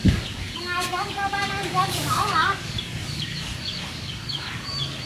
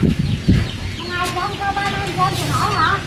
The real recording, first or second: second